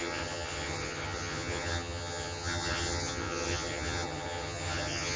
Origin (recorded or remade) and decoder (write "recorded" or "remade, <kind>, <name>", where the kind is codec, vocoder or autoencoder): remade, vocoder, HiFi-GAN